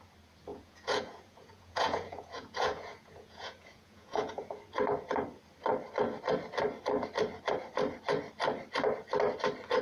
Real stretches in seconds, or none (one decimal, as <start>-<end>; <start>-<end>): 0.0-0.5; 4.6-9.8